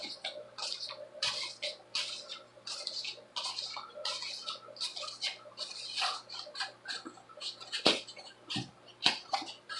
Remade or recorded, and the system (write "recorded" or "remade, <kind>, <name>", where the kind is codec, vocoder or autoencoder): recorded